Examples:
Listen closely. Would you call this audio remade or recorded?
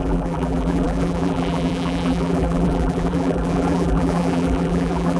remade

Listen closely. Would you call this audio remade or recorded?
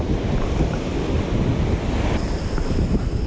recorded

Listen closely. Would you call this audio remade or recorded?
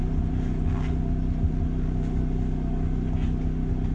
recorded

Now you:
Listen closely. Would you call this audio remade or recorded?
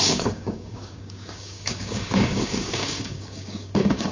remade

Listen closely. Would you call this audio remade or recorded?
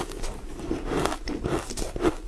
recorded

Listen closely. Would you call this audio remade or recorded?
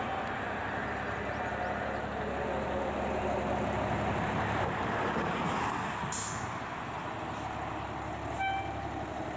recorded